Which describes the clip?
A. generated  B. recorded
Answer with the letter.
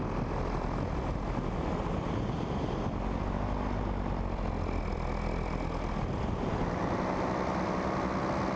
B